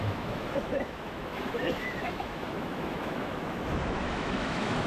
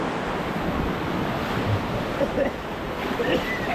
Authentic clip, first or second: second